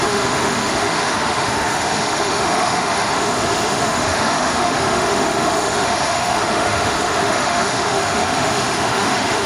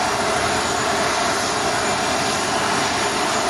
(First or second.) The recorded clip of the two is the second